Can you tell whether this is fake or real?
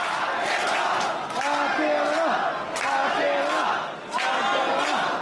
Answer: real